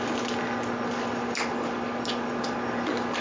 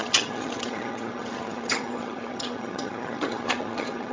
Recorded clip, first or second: first